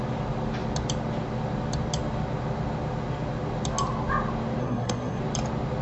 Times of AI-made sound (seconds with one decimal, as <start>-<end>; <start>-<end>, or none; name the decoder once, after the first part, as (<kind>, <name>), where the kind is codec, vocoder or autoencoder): 4.6-5.2 (codec, SNAC)